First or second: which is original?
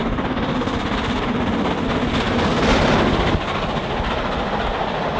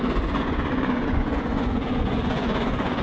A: first